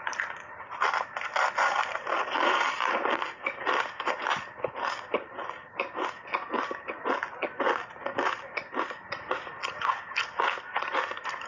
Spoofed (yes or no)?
no